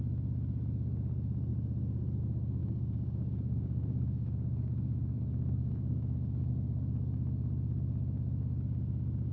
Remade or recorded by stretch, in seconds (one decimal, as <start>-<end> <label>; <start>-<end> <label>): 0.0-2.6 recorded; 2.6-6.5 remade; 6.5-9.3 recorded